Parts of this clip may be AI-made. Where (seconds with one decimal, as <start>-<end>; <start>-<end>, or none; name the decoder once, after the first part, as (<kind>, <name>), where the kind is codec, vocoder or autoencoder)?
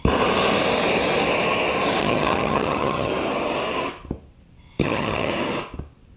2.0-3.1 (vocoder, HiFi-GAN); 4.8-5.3